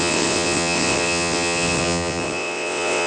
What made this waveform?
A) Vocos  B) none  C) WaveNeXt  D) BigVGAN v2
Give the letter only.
C